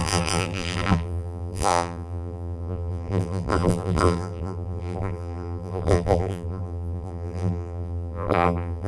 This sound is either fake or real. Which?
fake